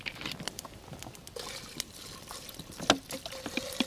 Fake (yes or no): no